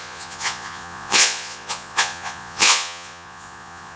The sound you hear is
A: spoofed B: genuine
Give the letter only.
A